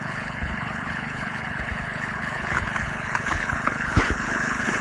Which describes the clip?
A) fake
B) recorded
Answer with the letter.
A